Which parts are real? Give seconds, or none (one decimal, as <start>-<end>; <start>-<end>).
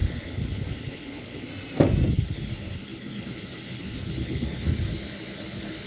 1.5-2.1